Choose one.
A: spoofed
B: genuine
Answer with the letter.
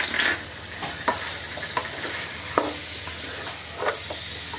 B